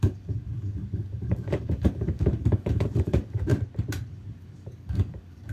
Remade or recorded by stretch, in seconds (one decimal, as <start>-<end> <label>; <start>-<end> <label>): 0.0-3.5 remade; 3.5-4.1 recorded; 4.1-5.5 remade

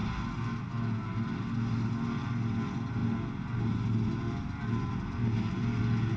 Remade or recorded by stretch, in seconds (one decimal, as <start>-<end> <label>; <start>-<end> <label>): 0.0-6.2 recorded

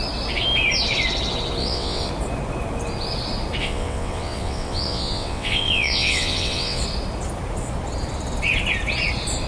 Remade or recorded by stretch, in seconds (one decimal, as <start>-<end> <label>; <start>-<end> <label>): 0.0-1.6 recorded; 1.6-2.1 remade; 2.1-3.6 recorded; 3.6-6.8 remade; 6.8-9.5 recorded

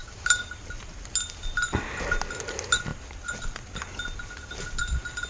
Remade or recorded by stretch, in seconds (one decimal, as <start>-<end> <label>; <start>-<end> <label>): 0.0-0.5 remade; 0.5-5.3 recorded

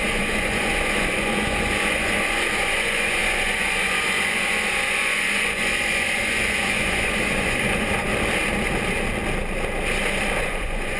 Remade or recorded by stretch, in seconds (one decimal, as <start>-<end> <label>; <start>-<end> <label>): 0.0-8.1 remade; 8.1-10.4 recorded; 10.4-11.0 remade

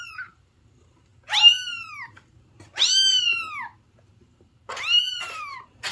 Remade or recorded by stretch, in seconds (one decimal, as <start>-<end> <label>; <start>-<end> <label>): 0.0-1.1 remade; 1.1-1.7 recorded; 1.7-5.9 remade

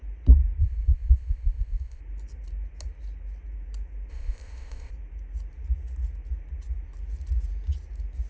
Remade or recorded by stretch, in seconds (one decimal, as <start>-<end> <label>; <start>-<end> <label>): 0.0-0.6 recorded; 0.6-2.0 remade; 2.0-4.1 recorded; 4.1-4.9 remade; 4.9-8.3 recorded

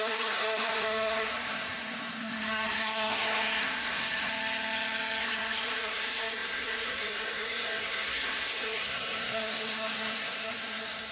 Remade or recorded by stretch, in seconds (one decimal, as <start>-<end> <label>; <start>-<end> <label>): 0.0-4.3 remade; 4.3-5.2 recorded; 5.2-11.1 remade